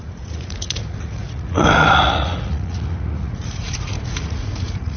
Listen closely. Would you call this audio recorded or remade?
remade